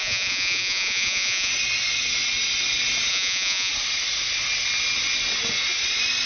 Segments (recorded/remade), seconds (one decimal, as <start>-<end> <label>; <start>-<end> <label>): 0.0-1.5 remade; 1.5-3.1 recorded; 3.1-3.7 remade; 3.7-6.3 recorded